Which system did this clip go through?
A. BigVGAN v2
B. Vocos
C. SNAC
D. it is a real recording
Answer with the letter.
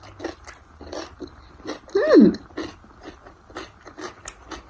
D